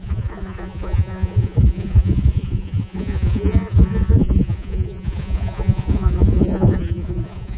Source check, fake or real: fake